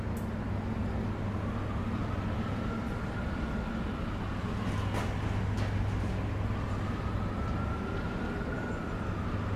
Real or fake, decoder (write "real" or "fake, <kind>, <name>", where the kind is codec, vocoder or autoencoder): real